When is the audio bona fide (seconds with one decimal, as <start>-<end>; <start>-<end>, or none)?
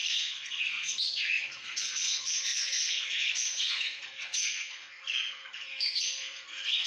none